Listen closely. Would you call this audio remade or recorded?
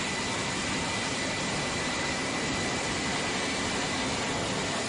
recorded